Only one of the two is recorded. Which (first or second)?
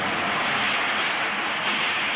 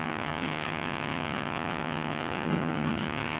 first